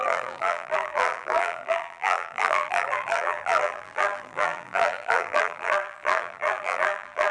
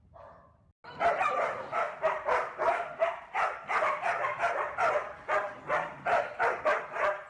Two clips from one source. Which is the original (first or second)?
second